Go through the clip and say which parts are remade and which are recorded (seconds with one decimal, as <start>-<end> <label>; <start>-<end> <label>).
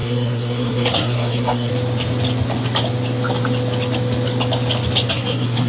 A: 0.0-1.7 remade; 1.7-5.1 recorded; 5.1-5.7 remade